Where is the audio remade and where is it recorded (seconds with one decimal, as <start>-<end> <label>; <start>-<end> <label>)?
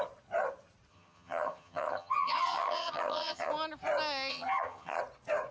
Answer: 0.0-0.9 recorded; 0.9-3.5 remade; 3.5-4.3 recorded; 4.3-5.0 remade; 5.0-5.5 recorded